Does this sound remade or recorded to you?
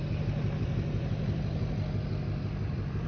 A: recorded